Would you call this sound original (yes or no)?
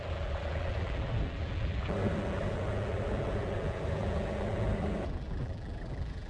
no